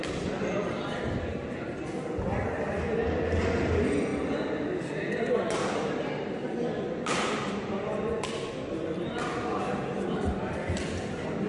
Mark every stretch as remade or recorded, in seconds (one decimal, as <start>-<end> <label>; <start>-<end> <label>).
0.0-11.5 recorded